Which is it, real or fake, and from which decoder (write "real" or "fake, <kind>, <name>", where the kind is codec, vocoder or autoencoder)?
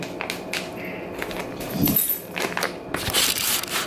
real